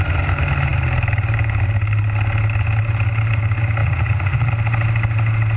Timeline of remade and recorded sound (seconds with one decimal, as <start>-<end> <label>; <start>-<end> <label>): 0.0-3.8 recorded; 3.8-4.5 remade; 4.5-5.6 recorded